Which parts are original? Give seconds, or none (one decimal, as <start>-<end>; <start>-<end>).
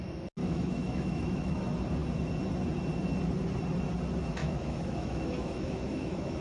0.0-0.4; 1.6-4.4